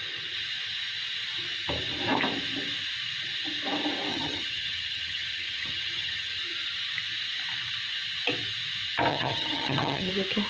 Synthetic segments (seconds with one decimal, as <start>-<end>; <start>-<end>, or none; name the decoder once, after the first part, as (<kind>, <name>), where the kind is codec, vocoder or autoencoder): 4.1-6.4 (vocoder, HiFi-GAN); 9.1-10.1